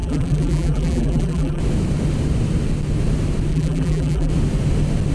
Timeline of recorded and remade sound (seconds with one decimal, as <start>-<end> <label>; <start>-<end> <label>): 0.0-1.6 remade; 1.6-3.5 recorded; 3.5-4.3 remade; 4.3-5.1 recorded